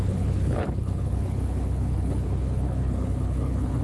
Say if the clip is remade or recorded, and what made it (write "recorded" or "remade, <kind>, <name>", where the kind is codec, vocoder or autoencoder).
remade, codec, HILCodec